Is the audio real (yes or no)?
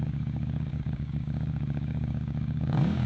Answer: no